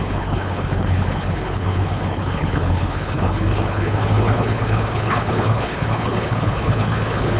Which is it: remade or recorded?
remade